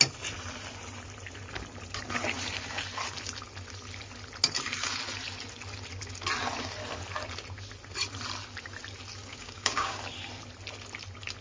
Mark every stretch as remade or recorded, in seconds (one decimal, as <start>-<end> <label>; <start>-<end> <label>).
0.0-9.3 recorded; 9.3-10.0 remade; 10.0-11.4 recorded